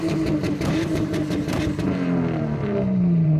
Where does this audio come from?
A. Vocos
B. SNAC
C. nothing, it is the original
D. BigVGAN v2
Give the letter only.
D